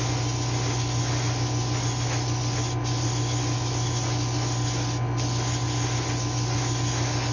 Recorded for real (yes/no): yes